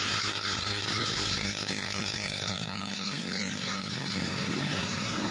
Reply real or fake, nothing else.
fake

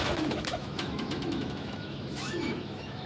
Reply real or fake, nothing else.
fake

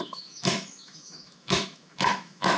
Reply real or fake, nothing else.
fake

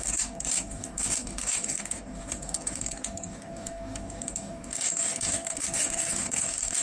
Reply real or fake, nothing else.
fake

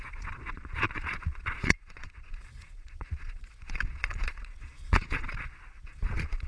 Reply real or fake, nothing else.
fake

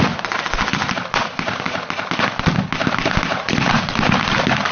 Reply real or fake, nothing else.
real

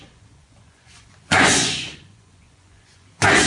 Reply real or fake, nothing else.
fake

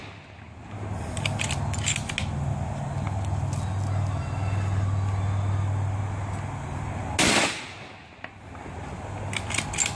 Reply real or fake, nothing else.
real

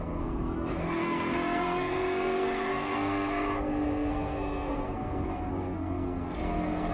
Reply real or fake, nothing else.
fake